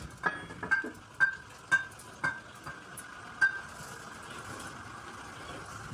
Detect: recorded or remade recorded